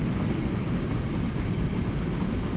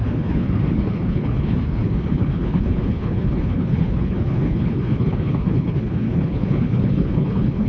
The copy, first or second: second